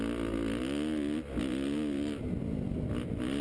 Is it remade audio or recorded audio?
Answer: recorded